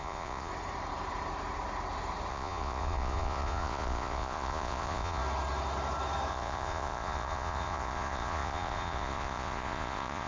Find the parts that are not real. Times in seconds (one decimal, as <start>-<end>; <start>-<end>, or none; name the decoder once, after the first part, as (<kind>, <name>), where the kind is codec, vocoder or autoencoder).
0.0-0.5 (vocoder, Vocos); 2.3-5.2; 6.3-10.3